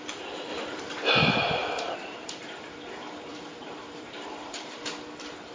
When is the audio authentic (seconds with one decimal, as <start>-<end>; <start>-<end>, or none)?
0.0-0.5; 1.1-1.6; 4.9-5.5